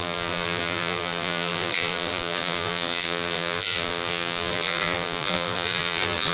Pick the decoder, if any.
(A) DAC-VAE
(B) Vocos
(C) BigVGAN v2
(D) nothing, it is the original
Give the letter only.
C